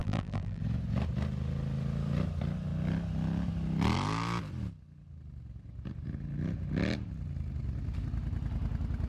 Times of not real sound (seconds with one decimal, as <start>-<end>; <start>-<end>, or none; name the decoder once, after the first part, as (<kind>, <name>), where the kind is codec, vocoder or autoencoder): 0.0-0.6 (vocoder, BigVGAN v2)